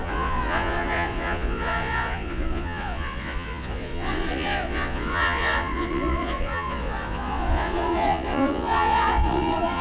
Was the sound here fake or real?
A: fake